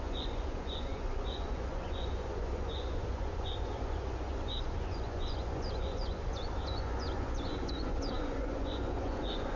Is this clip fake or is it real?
fake